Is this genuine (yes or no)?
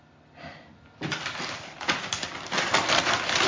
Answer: yes